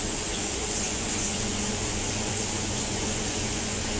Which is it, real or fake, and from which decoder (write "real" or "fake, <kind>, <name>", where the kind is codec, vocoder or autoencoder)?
fake, vocoder, Vocos